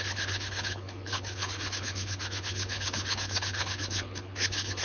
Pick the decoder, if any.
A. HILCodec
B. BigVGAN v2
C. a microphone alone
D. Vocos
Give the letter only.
A